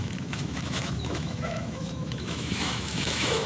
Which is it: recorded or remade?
remade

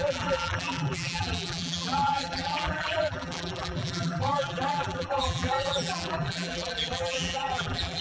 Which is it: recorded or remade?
remade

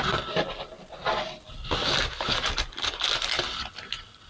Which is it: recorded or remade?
recorded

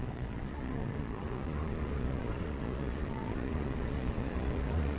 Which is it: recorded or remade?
remade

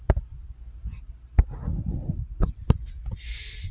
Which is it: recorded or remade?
recorded